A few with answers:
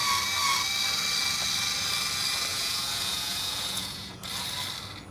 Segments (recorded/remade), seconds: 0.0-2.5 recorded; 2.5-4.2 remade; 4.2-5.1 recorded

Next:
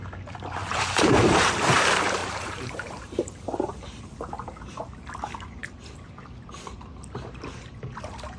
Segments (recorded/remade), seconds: 0.0-0.6 recorded; 0.6-1.5 remade; 1.5-2.2 recorded; 2.2-4.1 remade; 4.1-8.4 recorded

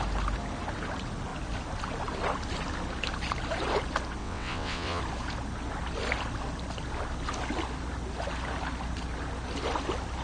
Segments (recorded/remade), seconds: 0.0-4.2 recorded; 4.2-5.0 remade; 5.0-10.2 recorded